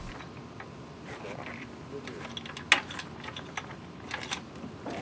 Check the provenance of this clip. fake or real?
real